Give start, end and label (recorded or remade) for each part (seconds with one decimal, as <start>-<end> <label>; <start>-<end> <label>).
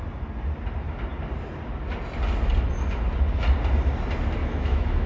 0.0-4.4 recorded; 4.4-5.1 remade